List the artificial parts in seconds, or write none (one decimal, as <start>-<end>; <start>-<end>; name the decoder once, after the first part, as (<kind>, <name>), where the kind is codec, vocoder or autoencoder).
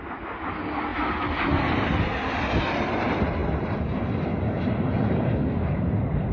none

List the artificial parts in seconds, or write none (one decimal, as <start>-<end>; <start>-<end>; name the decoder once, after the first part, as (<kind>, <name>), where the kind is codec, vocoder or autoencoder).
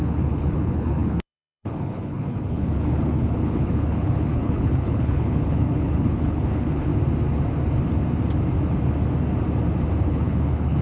0.0-6.9 (codec, HILCodec); 10.1-10.8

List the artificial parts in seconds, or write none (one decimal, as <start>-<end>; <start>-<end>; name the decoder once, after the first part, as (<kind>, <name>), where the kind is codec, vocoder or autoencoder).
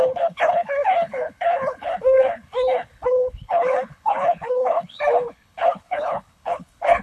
0.0-7.0 (codec, HILCodec)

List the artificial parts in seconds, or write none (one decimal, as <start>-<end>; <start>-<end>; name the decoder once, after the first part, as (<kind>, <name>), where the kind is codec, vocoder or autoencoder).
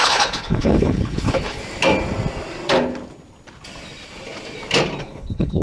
0.0-1.6 (codec, HILCodec); 5.0-5.6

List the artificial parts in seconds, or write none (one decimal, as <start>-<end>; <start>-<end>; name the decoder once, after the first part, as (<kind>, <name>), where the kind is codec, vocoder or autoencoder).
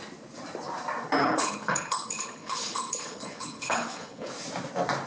1.2-4.3 (codec, HILCodec)